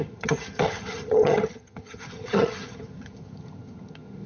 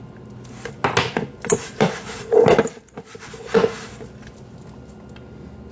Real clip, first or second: second